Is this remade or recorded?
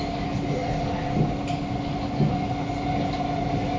recorded